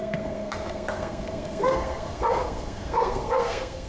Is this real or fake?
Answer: fake